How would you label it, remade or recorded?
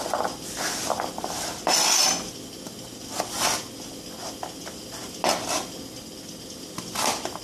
recorded